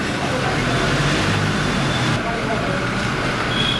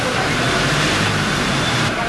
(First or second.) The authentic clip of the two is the first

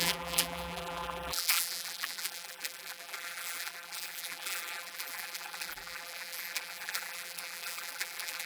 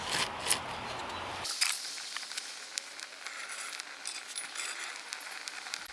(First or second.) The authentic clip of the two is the second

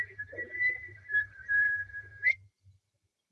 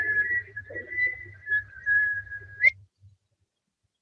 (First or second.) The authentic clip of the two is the second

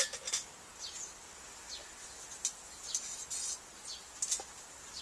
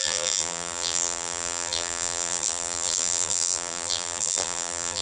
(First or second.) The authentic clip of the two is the first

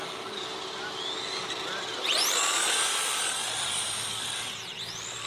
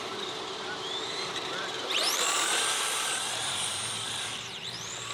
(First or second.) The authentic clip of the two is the first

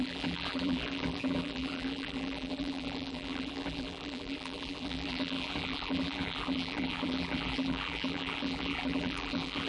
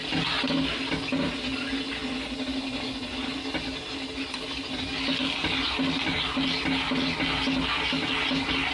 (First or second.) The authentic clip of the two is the second